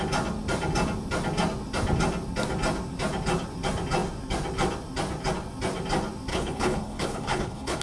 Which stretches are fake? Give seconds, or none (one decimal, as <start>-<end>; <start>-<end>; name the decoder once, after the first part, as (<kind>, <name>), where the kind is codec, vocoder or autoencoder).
6.3-7.8 (codec, HILCodec)